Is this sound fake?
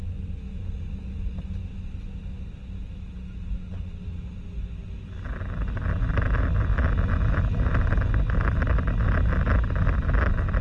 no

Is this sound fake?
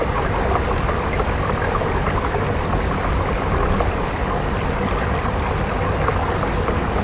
no